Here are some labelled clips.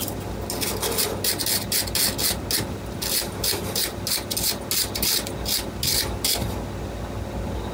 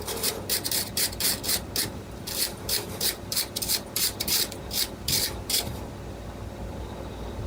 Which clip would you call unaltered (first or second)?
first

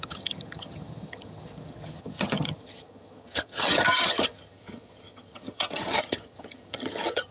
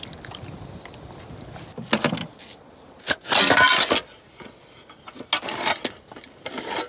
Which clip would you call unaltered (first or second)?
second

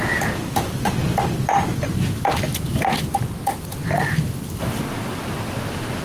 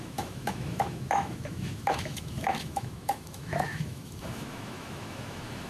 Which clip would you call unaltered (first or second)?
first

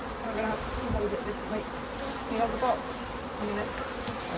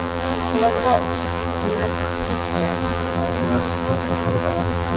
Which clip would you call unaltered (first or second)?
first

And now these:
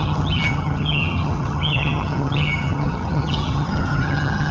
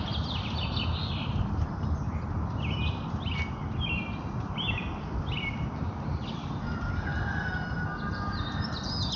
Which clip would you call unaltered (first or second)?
second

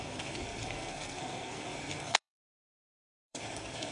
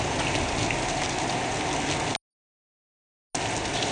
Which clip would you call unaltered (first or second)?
second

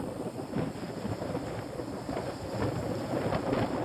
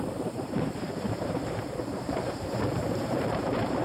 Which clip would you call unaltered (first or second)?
first